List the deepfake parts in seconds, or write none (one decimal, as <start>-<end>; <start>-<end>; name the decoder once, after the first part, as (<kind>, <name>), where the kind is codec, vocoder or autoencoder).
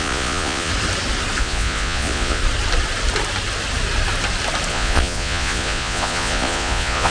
0.0-0.7 (vocoder, Vocos); 1.4-2.4; 4.7-7.1